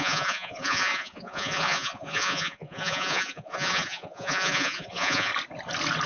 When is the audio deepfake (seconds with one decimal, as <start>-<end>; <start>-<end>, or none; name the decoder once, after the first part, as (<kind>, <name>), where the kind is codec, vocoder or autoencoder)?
0.0-5.3 (vocoder, Vocos)